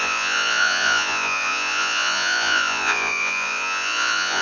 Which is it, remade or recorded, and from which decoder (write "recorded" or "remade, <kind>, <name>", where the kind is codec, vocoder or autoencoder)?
remade, vocoder, Vocos